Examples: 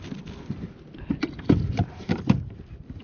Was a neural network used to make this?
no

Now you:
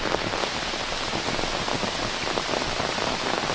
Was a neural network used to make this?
no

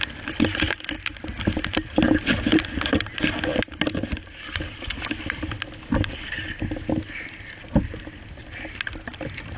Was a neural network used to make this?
no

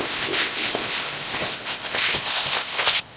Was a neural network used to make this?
yes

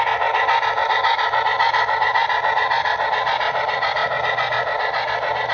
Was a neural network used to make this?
no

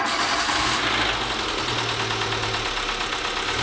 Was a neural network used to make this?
no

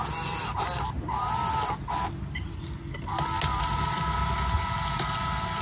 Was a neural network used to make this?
no